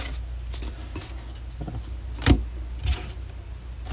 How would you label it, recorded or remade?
recorded